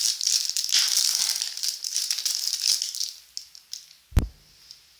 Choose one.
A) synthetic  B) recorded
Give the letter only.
B